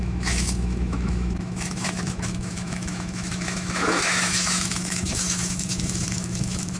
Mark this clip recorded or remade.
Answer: remade